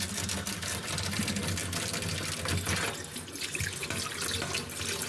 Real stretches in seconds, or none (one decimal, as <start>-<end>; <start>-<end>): 0.0-5.1